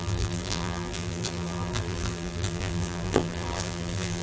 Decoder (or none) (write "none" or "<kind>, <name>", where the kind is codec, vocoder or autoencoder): vocoder, BigVGAN v2